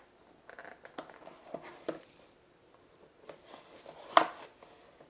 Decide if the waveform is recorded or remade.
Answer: recorded